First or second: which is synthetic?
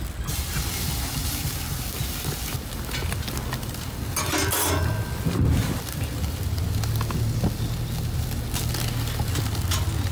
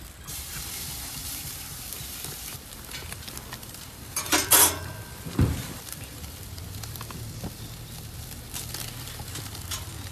second